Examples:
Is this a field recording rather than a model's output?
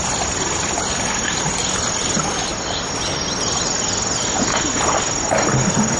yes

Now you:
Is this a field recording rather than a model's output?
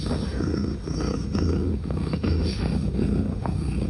no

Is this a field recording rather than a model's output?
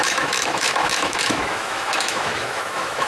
no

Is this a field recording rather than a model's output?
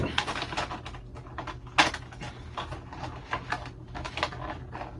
yes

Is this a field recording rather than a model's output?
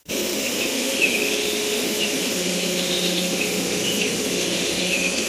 no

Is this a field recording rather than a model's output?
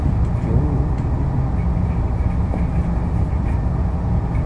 yes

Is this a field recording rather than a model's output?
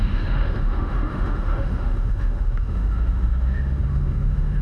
no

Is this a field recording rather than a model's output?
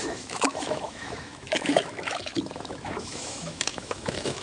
no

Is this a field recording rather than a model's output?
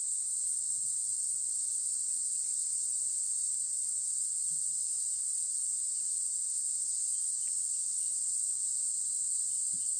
yes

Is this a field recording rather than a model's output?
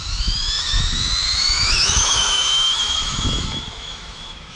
no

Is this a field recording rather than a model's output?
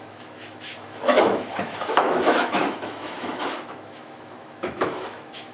no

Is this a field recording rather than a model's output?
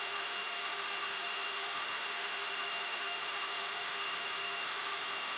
no